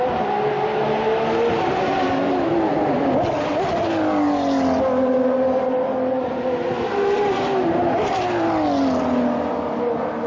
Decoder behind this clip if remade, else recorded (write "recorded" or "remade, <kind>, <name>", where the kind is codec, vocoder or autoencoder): recorded